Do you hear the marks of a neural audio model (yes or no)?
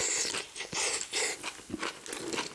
no